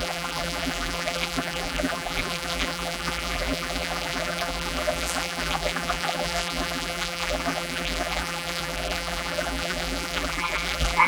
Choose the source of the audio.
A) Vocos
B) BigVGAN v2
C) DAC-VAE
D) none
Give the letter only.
B